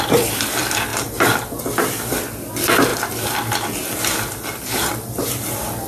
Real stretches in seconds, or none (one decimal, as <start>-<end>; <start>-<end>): 0.0-5.9